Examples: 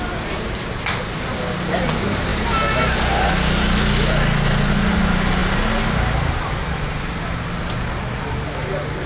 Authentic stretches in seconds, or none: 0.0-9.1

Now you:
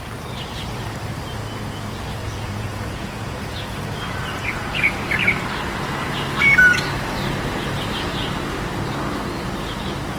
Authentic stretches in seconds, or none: 0.0-2.2; 4.9-10.2

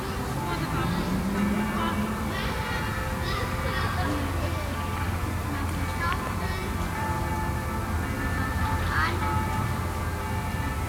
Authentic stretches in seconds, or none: 0.0-6.6; 7.3-8.5; 9.7-10.9

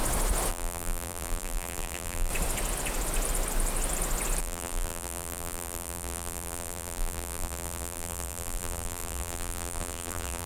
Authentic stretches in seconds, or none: 0.0-0.5; 2.3-4.4

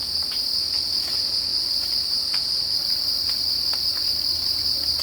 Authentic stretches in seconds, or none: 0.0-1.5; 2.8-4.0

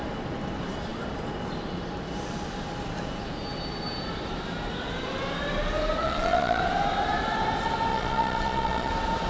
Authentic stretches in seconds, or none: 0.0-6.0; 6.6-7.9; 8.9-9.3

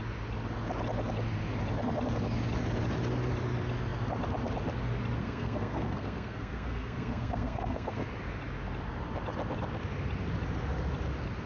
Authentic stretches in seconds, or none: 0.0-5.2; 8.1-11.5

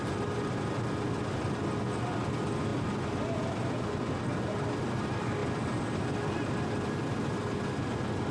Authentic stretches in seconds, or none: 0.0-8.3